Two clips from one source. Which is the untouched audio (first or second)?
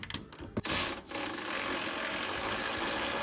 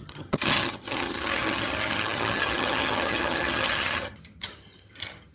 first